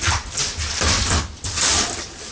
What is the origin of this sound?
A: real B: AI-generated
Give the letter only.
A